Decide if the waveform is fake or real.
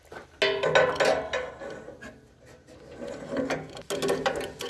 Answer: real